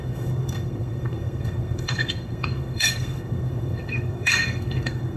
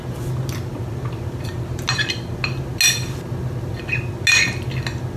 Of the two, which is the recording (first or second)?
second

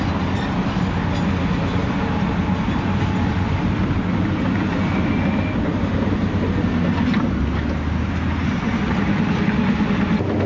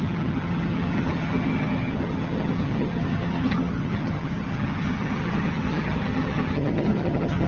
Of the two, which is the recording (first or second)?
first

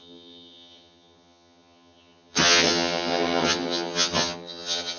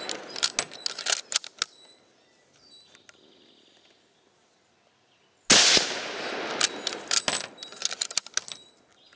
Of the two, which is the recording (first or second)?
second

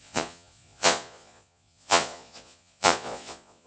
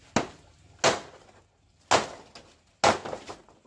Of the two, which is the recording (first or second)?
second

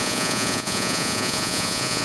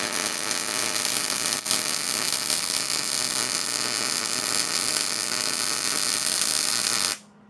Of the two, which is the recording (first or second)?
second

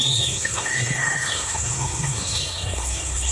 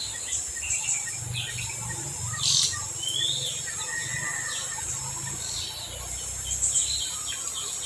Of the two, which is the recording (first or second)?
second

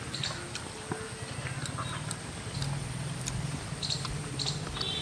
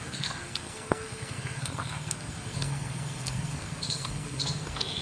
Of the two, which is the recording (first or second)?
first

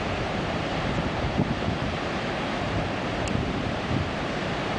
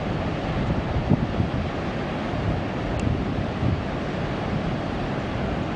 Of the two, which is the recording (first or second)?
second